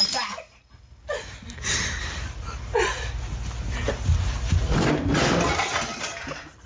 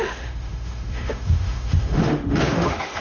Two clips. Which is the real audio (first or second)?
first